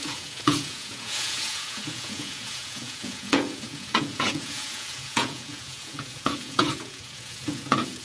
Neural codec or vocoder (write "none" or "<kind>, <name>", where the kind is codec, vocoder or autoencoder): vocoder, Vocos